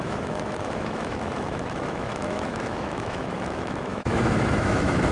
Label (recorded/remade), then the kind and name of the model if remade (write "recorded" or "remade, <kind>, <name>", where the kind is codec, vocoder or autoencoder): remade, autoencoder, DAC-VAE